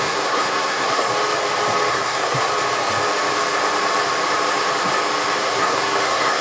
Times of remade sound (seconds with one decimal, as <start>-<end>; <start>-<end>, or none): 0.0-1.1; 1.9-2.5; 5.4-6.4